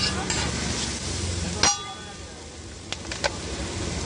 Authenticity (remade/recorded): recorded